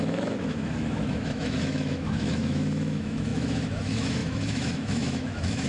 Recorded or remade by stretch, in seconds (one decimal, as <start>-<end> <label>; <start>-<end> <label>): 0.0-5.7 remade